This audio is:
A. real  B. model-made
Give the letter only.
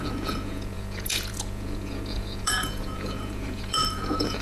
B